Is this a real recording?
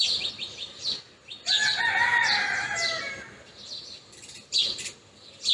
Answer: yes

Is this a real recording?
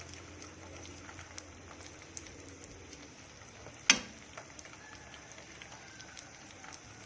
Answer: yes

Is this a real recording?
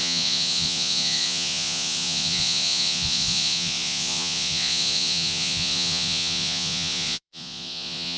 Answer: no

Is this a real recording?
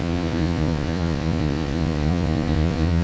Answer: no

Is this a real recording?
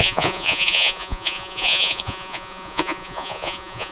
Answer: no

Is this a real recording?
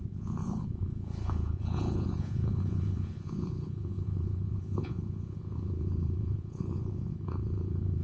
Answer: no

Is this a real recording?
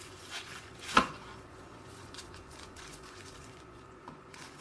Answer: no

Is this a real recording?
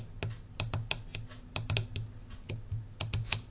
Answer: yes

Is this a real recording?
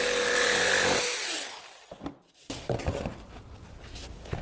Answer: yes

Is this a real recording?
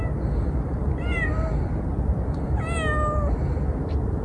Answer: yes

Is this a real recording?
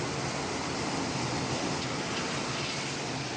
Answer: yes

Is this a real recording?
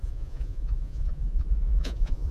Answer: no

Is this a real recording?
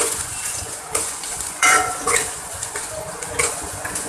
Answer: no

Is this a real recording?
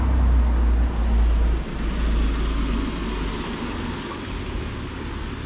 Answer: yes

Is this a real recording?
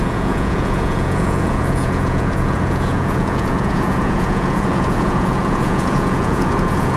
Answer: no